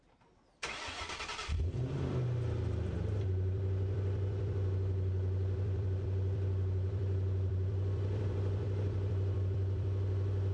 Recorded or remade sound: remade